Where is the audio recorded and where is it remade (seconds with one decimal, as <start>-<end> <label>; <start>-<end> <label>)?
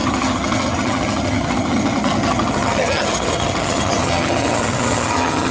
0.0-5.5 remade